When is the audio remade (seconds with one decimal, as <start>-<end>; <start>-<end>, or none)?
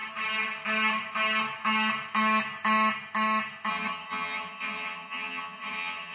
3.7-6.1